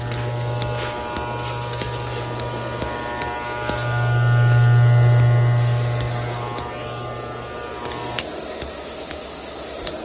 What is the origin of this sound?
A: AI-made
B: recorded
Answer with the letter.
B